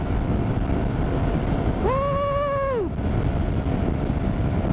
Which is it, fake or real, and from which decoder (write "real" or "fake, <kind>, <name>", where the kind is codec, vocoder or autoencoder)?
real